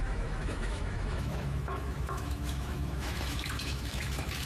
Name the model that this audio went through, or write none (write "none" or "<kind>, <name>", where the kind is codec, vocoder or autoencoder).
autoencoder, DAC-VAE